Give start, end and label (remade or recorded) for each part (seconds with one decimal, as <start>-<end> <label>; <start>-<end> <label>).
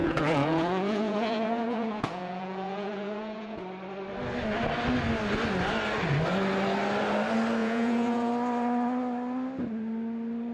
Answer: 0.0-3.6 remade; 3.6-7.6 recorded; 7.6-8.3 remade; 8.3-10.5 recorded